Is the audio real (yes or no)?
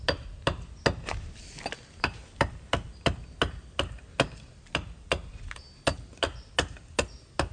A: yes